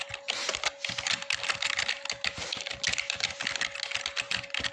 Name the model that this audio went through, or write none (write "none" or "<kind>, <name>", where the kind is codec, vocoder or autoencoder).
none